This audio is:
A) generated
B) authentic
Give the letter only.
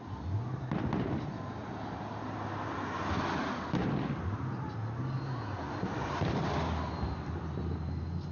B